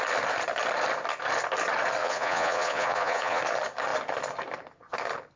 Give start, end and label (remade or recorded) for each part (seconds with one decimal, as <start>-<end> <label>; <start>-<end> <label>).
0.0-2.0 recorded; 2.0-3.4 remade; 3.4-5.4 recorded